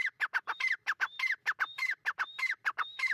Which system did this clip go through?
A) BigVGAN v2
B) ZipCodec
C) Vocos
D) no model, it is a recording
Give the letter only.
A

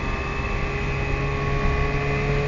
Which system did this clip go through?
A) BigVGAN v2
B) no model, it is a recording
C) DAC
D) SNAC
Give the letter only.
B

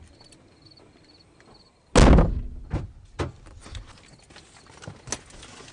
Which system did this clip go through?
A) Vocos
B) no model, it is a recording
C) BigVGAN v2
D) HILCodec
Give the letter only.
B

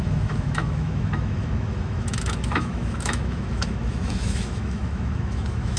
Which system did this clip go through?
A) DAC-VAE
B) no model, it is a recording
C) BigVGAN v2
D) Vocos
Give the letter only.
A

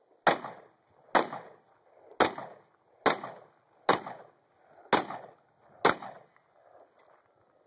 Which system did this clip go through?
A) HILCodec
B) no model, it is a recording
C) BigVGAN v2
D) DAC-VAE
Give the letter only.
B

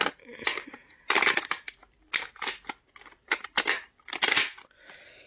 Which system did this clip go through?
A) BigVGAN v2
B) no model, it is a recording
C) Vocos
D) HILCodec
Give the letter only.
B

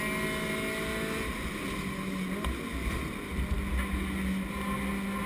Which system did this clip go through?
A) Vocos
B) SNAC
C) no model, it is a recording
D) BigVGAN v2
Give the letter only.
C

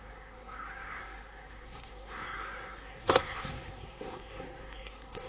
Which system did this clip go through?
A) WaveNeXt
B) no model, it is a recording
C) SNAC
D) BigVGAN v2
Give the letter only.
C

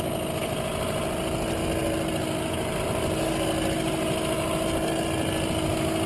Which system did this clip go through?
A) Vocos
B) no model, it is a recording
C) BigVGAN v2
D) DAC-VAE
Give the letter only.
B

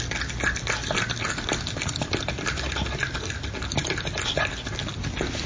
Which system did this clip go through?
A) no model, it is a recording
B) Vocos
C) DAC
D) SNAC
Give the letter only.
A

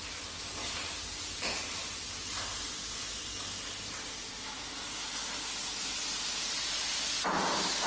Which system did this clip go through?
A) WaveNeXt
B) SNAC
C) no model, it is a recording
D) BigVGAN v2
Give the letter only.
C